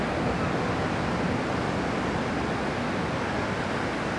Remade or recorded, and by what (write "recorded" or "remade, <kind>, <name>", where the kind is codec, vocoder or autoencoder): recorded